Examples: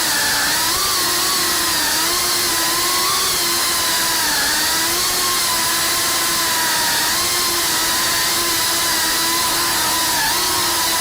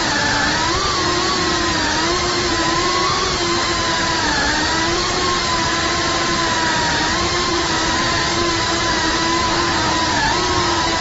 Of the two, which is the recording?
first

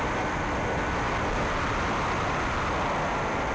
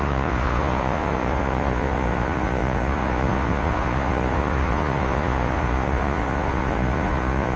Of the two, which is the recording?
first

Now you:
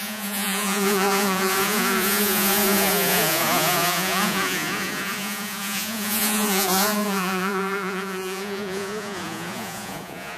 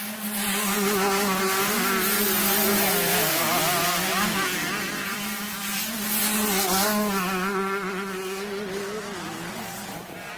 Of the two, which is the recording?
second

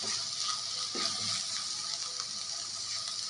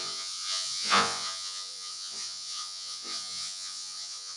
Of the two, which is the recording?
first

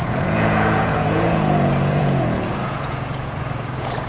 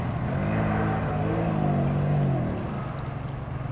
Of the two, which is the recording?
second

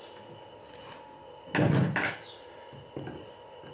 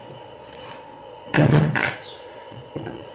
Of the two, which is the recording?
first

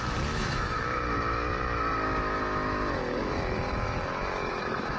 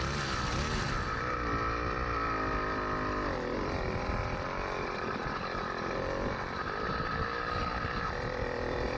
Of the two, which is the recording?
second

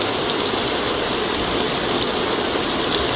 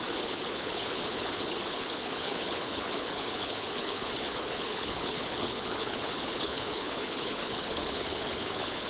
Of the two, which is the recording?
first